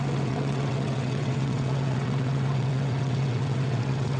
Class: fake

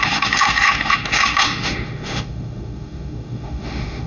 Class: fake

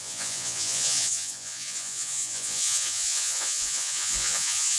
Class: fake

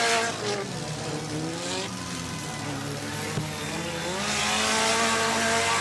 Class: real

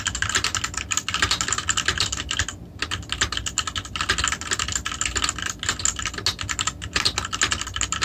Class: real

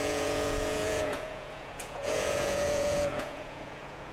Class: fake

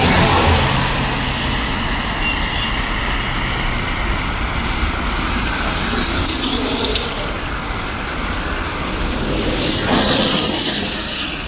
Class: real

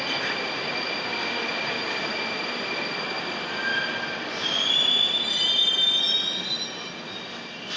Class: fake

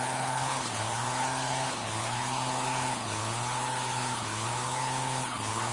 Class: fake